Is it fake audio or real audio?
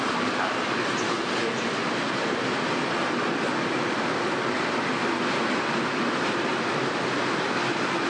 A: real